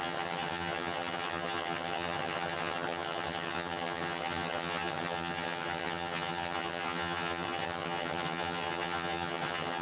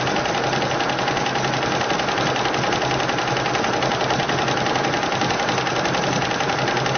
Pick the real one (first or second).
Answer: second